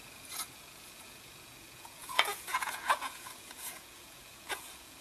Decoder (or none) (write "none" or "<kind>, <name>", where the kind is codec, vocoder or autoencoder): vocoder, Vocos